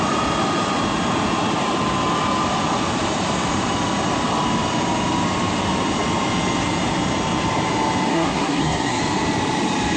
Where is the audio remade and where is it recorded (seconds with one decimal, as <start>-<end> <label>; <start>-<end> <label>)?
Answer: 0.0-8.1 recorded; 8.1-9.0 remade; 9.0-10.0 recorded